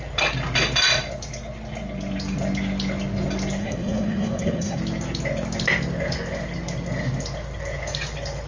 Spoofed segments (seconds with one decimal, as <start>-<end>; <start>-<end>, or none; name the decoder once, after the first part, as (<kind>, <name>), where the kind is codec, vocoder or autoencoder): 3.6-4.8 (codec, SNAC)